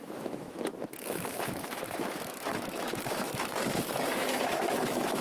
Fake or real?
fake